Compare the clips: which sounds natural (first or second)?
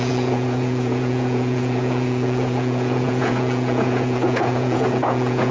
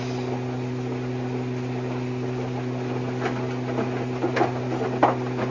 second